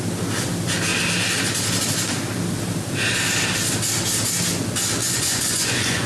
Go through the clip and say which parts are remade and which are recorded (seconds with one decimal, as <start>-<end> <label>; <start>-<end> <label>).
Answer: 0.0-5.0 recorded; 5.0-6.1 remade